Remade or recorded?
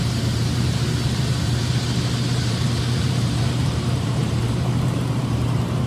remade